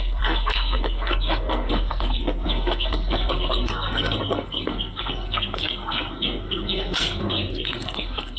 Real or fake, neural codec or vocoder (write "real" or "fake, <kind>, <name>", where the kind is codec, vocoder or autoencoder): fake, codec, SNAC